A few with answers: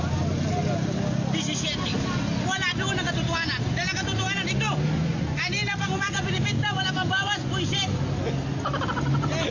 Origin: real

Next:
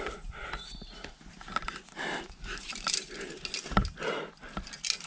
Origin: real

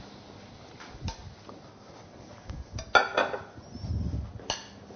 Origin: real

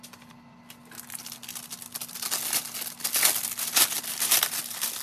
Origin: real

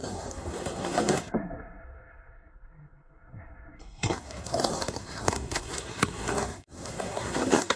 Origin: fake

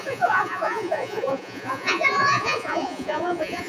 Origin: fake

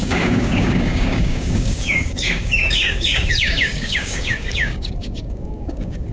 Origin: fake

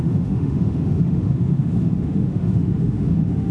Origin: fake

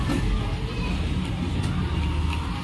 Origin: real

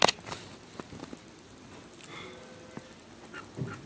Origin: real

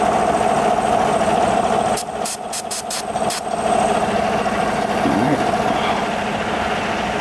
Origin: real